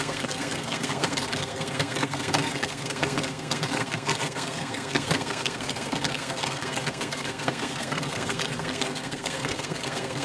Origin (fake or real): fake